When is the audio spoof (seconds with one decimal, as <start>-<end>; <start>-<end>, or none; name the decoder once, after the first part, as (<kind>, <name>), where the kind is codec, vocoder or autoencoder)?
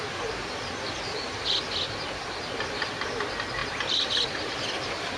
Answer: none